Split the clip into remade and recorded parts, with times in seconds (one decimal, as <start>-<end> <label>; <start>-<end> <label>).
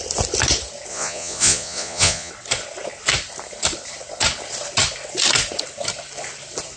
0.0-0.9 recorded; 0.9-2.3 remade; 2.3-6.8 recorded